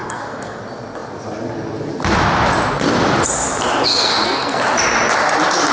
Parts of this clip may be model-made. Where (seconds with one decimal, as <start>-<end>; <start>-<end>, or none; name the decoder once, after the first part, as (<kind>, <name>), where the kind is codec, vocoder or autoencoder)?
0.0-0.6 (codec, SNAC); 3.9-4.6